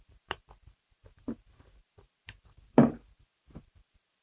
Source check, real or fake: fake